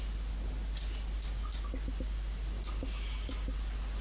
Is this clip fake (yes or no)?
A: no